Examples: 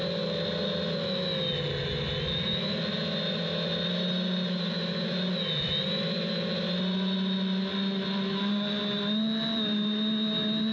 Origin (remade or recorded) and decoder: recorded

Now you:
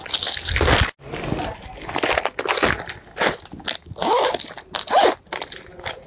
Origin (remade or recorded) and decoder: recorded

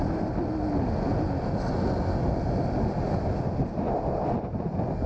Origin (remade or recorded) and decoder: recorded